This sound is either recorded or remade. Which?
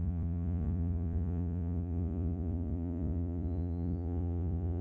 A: remade